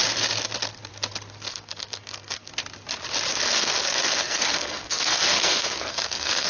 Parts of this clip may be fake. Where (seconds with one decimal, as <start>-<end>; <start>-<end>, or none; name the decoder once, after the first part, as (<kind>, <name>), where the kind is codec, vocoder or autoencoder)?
1.5-2.5 (codec, SNAC); 3.3-6.5